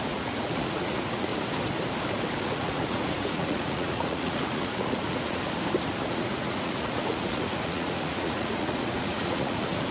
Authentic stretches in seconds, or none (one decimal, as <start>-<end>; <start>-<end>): 1.3-2.4; 5.4-5.9